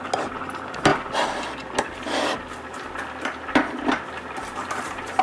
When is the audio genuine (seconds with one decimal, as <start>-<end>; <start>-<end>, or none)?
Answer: 0.0-5.2